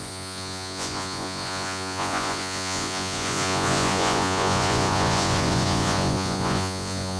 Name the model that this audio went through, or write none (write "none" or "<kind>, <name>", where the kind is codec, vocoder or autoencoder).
vocoder, Vocos